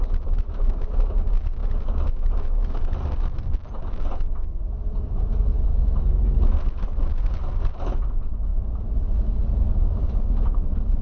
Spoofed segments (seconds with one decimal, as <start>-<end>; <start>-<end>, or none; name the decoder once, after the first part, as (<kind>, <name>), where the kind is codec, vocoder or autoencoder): none